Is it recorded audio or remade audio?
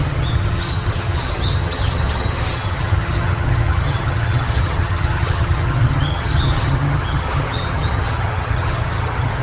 remade